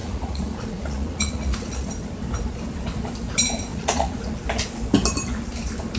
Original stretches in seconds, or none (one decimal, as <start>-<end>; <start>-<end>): 1.9-3.7; 4.3-6.0